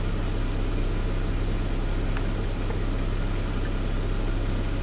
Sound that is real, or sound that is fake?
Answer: real